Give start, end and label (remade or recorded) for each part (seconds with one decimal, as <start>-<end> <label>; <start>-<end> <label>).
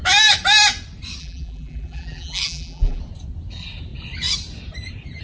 0.0-1.2 recorded; 1.2-3.0 remade; 3.0-5.2 recorded